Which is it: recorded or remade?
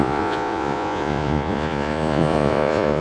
remade